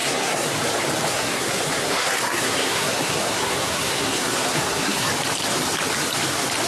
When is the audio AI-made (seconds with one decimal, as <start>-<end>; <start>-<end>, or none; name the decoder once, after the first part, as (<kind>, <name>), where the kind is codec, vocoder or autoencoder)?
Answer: 0.0-0.5 (codec, SNAC); 1.1-5.1